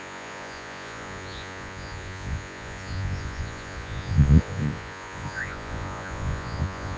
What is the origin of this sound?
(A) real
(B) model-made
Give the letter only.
B